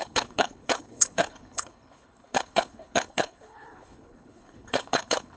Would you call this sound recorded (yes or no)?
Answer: no